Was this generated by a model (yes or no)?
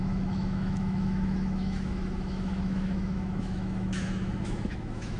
yes